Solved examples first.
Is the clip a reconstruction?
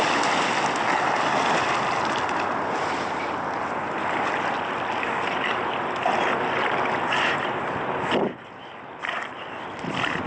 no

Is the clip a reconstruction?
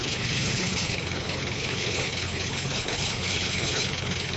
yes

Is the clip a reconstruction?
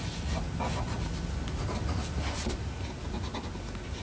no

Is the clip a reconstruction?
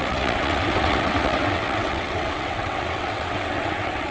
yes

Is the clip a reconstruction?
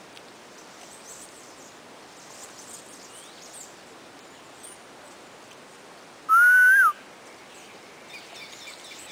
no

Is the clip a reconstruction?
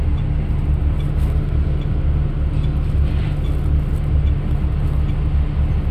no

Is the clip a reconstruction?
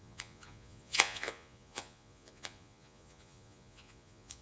yes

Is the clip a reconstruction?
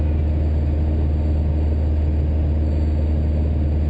no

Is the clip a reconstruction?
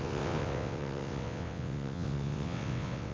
yes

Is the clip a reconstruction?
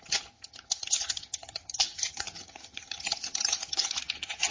yes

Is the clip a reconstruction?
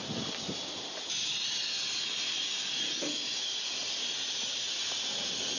no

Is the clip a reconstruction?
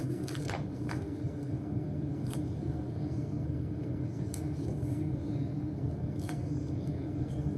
yes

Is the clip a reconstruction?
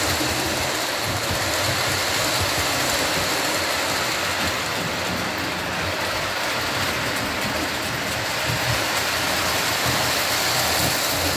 no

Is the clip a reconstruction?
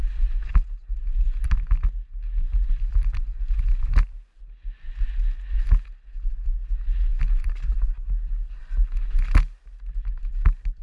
no